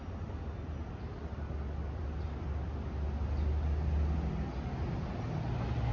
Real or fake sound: real